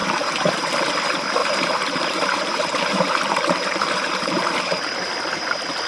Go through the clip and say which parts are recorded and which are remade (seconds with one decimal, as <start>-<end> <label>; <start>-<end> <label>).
0.0-0.7 remade; 0.7-1.4 recorded; 1.4-4.9 remade; 4.9-5.9 recorded